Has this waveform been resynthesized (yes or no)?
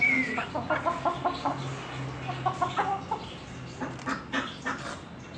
no